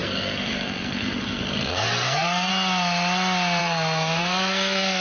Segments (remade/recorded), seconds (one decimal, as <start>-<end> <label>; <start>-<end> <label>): 0.0-2.5 remade; 2.5-3.6 recorded; 3.6-5.0 remade

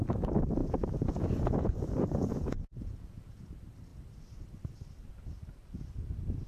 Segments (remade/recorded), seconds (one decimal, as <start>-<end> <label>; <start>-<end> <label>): 0.0-0.6 recorded; 0.6-3.5 remade; 3.5-6.5 recorded

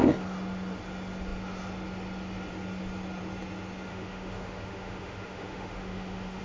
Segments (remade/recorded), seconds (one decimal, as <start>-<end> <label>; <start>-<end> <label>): 0.0-3.9 recorded; 3.9-6.4 remade

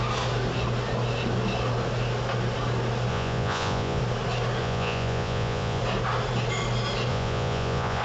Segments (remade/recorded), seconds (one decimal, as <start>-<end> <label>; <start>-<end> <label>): 0.0-3.1 recorded; 3.1-4.0 remade; 4.0-4.6 recorded; 4.6-5.8 remade; 5.8-7.1 recorded; 7.1-8.0 remade

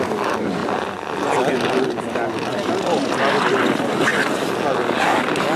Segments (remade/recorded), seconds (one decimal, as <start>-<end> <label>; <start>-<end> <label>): 0.0-5.6 recorded

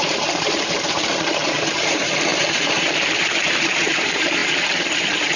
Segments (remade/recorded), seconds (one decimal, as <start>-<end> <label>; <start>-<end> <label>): 0.0-5.4 remade

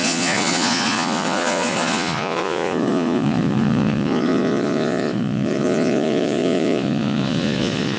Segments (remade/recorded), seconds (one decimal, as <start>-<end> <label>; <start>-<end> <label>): 0.0-8.0 remade